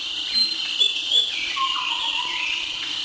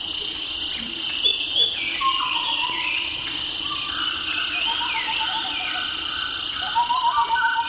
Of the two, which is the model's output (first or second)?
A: first